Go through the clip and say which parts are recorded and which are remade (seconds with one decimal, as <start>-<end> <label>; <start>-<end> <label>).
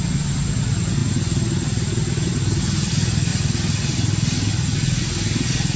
0.0-5.8 recorded